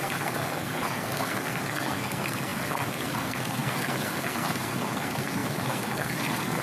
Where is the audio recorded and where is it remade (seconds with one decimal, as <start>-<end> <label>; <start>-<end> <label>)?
0.0-6.6 remade